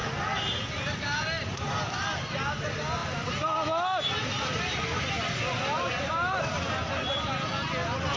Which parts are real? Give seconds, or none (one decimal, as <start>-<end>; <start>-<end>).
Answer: 0.0-8.2